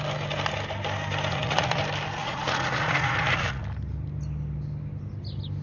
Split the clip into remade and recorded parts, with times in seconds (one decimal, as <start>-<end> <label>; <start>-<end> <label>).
0.0-1.3 recorded; 1.3-1.8 remade; 1.8-2.2 recorded; 2.2-3.6 remade; 3.6-5.6 recorded